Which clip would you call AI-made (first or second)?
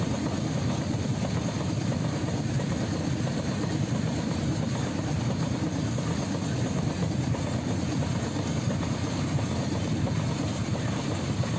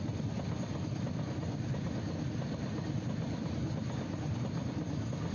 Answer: first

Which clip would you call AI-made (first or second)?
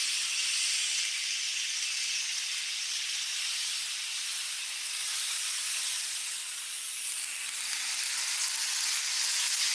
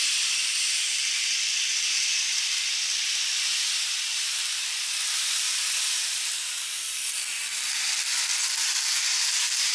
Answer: second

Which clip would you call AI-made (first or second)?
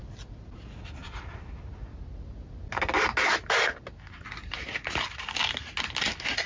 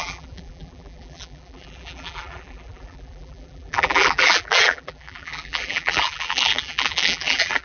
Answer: second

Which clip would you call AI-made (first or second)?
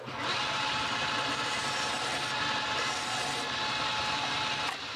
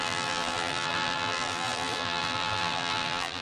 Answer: second